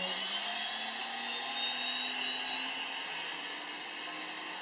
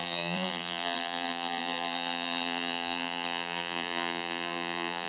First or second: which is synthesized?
second